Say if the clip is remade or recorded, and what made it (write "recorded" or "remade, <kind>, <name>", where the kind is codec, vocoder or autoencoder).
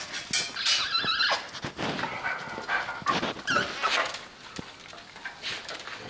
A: recorded